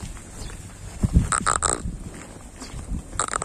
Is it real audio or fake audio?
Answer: real